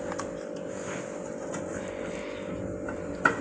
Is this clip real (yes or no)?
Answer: yes